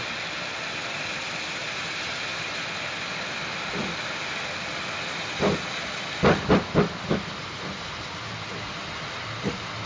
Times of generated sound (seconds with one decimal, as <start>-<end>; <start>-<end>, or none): none